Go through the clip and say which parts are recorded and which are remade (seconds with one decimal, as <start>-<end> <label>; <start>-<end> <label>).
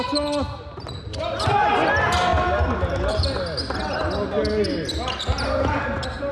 0.0-6.3 recorded